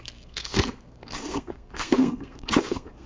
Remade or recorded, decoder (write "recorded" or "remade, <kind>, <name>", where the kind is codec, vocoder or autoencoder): remade, codec, SNAC